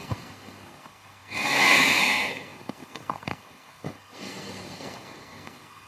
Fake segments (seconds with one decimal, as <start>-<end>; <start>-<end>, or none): 0.0-5.9